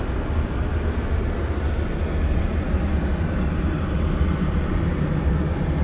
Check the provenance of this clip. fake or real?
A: real